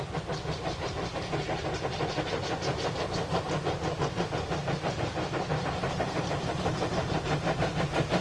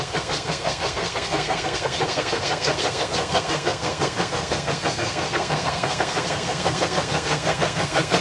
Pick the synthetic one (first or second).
second